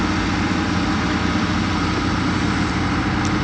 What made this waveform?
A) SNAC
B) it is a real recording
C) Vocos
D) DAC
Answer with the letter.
B